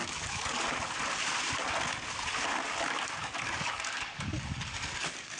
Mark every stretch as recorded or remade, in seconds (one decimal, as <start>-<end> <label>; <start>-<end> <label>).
0.0-0.6 remade; 0.6-3.2 recorded; 3.2-5.4 remade